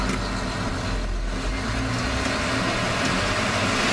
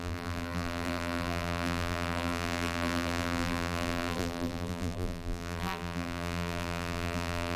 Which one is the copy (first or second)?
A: second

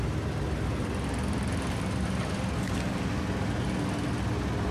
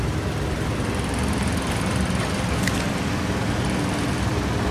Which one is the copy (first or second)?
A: second